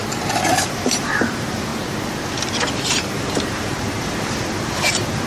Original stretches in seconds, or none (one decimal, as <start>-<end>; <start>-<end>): 0.0-0.6; 1.7-2.7